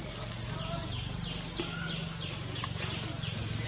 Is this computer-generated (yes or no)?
no